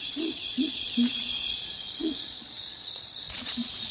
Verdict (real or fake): fake